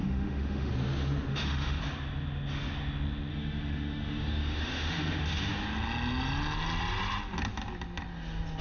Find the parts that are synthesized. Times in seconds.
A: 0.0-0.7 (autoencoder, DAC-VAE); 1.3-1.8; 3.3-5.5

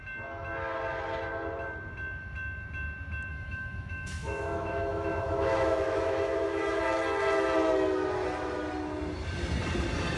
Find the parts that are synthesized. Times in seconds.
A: 3.3-6.8 (autoencoder, DAC-VAE)